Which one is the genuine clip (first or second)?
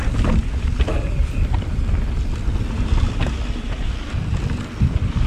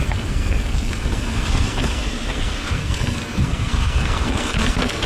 first